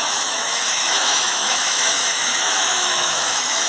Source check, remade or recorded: remade